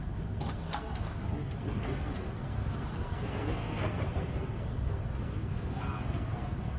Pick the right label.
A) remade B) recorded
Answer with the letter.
A